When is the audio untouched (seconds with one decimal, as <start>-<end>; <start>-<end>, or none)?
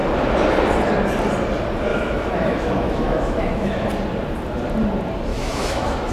0.0-1.9; 3.9-5.3